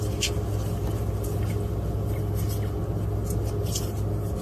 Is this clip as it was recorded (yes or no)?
yes